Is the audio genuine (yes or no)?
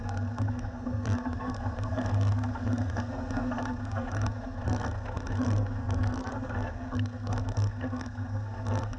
no